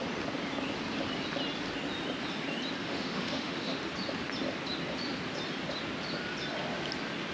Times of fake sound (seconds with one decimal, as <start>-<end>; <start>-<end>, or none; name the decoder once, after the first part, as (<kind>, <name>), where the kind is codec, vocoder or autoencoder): 2.8-3.8 (autoencoder, DAC-VAE)